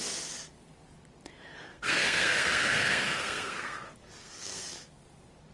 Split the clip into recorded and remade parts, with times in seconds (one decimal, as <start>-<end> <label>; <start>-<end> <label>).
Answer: 0.0-1.7 recorded; 1.7-3.8 remade; 3.8-4.2 recorded; 4.2-4.9 remade; 4.9-5.5 recorded